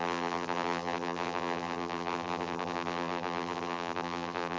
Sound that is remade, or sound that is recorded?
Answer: remade